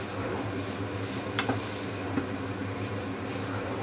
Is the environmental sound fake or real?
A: real